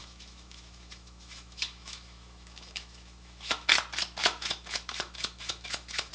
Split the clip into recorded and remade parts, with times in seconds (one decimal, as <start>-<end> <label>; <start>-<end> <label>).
0.0-3.7 remade; 3.7-4.2 recorded; 4.2-6.1 remade